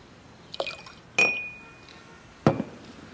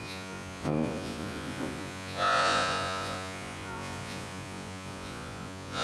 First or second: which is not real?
second